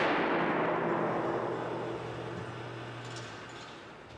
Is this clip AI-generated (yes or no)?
no